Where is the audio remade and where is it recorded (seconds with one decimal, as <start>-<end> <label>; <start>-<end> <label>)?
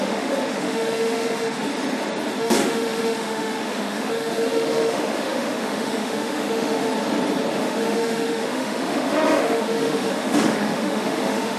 0.0-1.7 remade; 1.7-2.4 recorded; 2.4-6.9 remade; 6.9-7.5 recorded; 7.5-11.6 remade